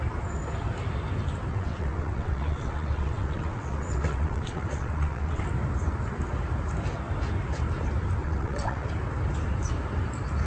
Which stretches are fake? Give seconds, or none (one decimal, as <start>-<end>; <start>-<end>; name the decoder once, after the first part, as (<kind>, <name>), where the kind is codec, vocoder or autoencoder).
1.5-5.4 (vocoder, WaveNeXt); 8.2-8.9